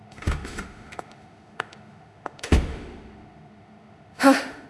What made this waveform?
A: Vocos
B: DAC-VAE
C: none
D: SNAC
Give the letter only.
B